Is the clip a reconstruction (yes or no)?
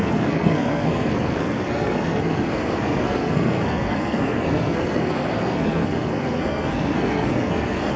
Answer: yes